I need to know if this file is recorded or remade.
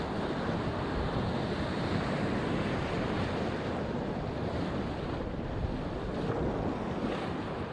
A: recorded